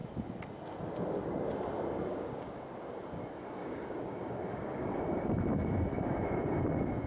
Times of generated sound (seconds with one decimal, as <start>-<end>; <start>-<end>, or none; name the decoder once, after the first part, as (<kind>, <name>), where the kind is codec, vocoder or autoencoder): 2.1-2.6 (codec, DAC); 3.6-5.0